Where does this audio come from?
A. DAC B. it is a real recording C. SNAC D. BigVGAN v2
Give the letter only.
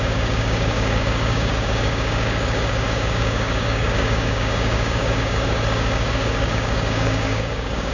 A